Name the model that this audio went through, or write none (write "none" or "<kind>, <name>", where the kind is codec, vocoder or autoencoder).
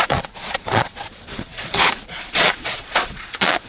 vocoder, Vocos